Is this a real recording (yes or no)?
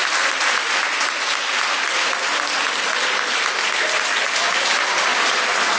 yes